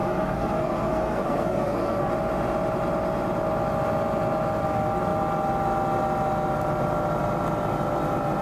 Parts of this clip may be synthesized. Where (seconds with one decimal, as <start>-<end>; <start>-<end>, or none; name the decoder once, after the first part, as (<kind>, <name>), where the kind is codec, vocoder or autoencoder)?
0.0-2.1 (codec, SNAC)